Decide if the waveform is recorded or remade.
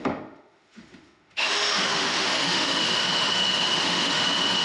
remade